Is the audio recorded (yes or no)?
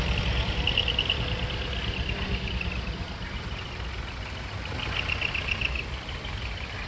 yes